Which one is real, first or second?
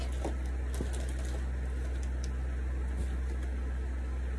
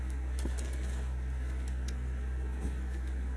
first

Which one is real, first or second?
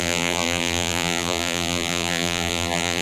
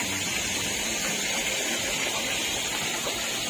second